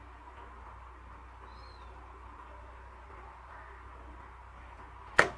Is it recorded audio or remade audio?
recorded